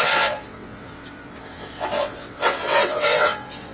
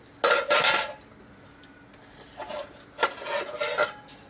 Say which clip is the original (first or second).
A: second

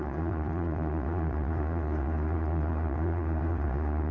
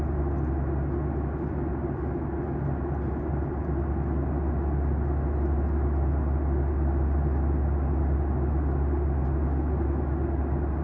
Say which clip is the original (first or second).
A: second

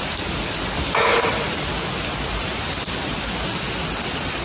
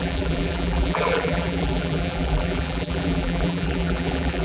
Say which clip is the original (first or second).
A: first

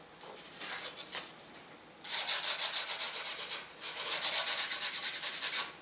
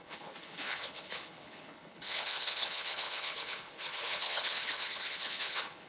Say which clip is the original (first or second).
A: first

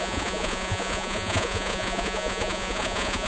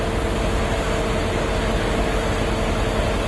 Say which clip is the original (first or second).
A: second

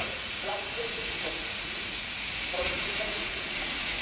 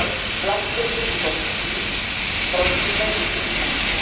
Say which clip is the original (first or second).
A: second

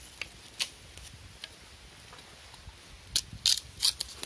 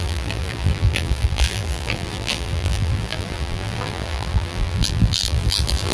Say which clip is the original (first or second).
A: first